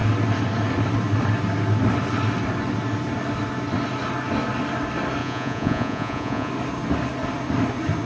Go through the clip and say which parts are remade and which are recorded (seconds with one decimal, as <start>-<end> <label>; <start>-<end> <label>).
0.0-5.2 recorded; 5.2-6.5 remade; 6.5-8.1 recorded